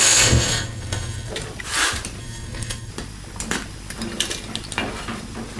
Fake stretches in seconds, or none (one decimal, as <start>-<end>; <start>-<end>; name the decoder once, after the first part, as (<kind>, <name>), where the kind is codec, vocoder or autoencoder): 0.0-1.3 (codec, SNAC); 2.2-2.9